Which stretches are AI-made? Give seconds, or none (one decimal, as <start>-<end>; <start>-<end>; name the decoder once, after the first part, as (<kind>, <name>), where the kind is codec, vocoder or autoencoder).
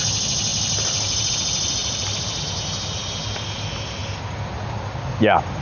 1.8-2.4 (vocoder, BigVGAN v2)